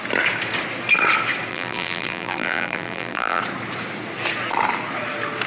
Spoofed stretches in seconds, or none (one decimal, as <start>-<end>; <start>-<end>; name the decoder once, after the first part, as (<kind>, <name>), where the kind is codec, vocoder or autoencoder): 1.5-3.4 (vocoder, BigVGAN v2)

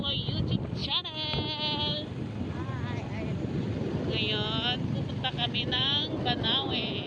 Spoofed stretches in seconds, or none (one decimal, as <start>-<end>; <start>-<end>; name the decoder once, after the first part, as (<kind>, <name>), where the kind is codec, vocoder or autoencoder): 0.0-0.8 (vocoder, BigVGAN v2); 5.1-7.1

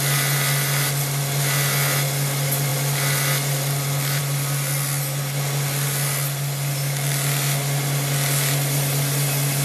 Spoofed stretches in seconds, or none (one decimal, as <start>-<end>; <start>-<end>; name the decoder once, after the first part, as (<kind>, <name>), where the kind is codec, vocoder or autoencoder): none

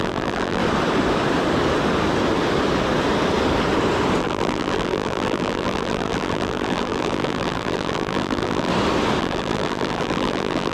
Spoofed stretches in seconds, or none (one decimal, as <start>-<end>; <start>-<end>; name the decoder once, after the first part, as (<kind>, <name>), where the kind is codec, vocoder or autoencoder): 0.0-0.6 (vocoder, BigVGAN v2); 4.2-8.7; 9.2-10.7

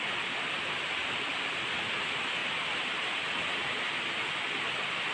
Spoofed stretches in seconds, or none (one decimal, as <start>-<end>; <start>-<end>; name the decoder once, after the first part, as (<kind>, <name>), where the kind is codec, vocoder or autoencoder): 1.0-1.7 (vocoder, BigVGAN v2)